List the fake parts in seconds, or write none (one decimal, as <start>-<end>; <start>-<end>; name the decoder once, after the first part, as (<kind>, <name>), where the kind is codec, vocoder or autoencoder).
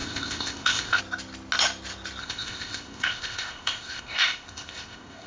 0.0-1.0 (codec, ZipCodec); 2.2-5.3